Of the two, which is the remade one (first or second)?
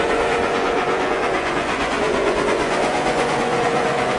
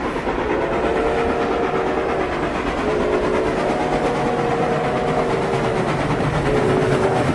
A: first